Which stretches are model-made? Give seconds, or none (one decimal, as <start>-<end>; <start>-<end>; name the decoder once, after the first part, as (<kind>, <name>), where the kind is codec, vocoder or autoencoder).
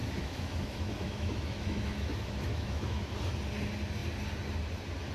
0.0-3.1 (autoencoder, DAC-VAE)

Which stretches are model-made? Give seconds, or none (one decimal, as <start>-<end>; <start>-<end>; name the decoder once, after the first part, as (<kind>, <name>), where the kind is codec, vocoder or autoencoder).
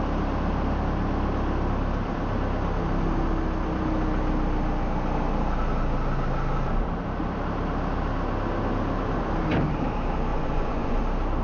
10.3-11.0 (vocoder, Vocos)